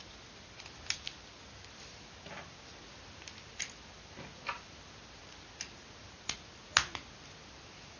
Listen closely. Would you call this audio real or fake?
real